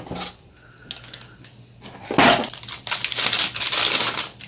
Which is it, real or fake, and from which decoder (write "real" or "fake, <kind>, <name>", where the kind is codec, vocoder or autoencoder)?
real